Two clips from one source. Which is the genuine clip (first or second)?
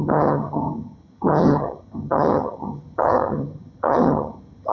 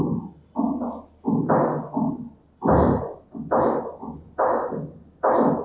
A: second